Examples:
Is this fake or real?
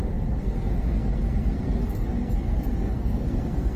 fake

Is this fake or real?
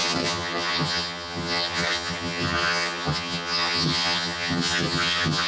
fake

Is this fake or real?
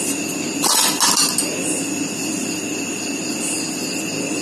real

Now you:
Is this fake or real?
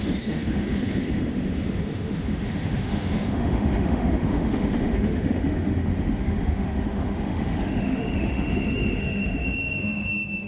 fake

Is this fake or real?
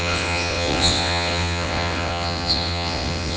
fake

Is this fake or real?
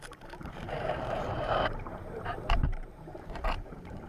fake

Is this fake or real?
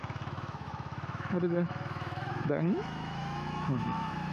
fake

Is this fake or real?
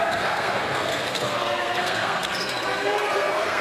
fake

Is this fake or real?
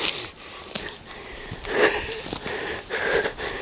real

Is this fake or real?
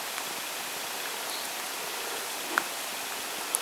real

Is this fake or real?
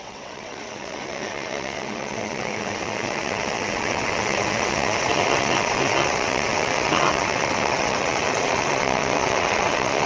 fake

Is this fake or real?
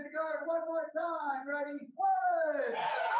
fake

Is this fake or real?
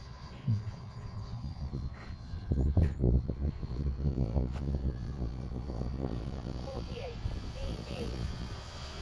fake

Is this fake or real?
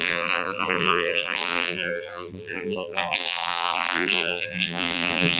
fake